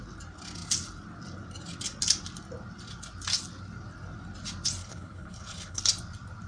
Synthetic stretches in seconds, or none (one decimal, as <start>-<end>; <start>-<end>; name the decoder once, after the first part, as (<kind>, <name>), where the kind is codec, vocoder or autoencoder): 4.8-5.8 (codec, HILCodec)